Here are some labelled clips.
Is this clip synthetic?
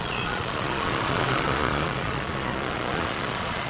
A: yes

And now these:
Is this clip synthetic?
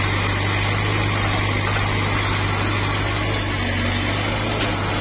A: no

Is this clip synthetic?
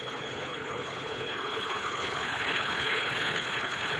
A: yes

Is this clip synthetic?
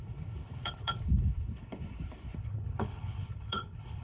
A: yes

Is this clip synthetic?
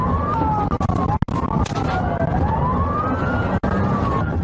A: no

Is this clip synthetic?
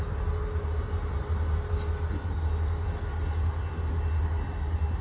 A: no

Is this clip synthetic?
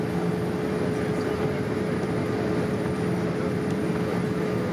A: no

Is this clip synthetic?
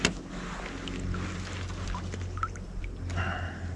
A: no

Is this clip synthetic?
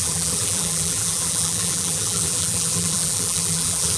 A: yes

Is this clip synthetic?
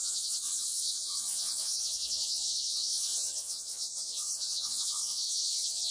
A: yes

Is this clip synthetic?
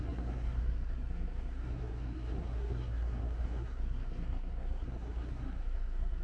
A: yes